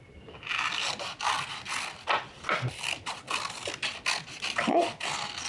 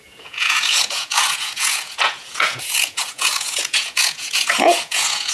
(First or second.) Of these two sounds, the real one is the first